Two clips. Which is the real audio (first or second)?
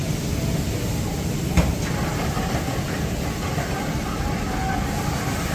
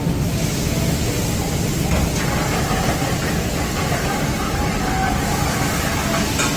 second